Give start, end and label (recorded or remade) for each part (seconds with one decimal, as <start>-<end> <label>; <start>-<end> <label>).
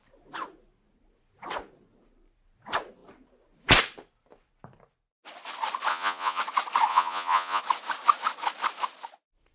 0.0-5.9 recorded; 5.9-6.4 remade; 6.4-6.9 recorded; 6.9-7.6 remade; 7.6-9.5 recorded